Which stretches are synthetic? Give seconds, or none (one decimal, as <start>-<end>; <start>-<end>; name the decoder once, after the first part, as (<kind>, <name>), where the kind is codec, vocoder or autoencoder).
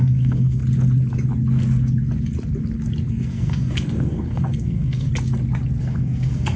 0.0-0.6 (codec, SNAC); 3.1-5.1; 5.8-6.6